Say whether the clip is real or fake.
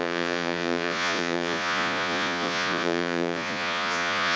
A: fake